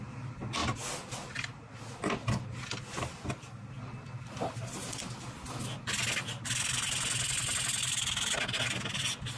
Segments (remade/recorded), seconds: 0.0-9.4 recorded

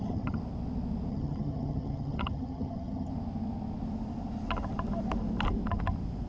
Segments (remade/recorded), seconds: 0.0-0.4 remade; 0.4-1.1 recorded; 1.1-3.1 remade; 3.1-6.3 recorded

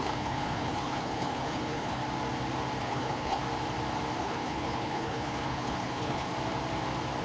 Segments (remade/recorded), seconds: 0.0-2.0 remade; 2.0-2.8 recorded; 2.8-3.4 remade; 3.4-4.2 recorded; 4.2-6.3 remade; 6.3-7.2 recorded

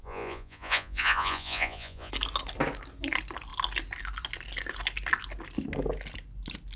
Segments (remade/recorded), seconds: 0.0-2.1 remade; 2.1-6.8 recorded

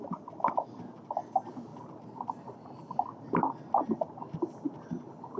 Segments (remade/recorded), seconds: 0.0-5.4 recorded

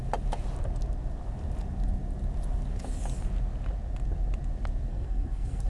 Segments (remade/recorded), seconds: 0.0-4.9 recorded; 4.9-5.7 remade

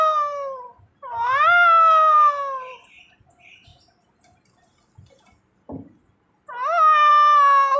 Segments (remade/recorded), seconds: 0.0-7.8 recorded

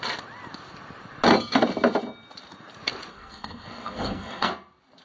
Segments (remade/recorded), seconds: 0.0-3.1 recorded; 3.1-4.5 remade; 4.5-5.0 recorded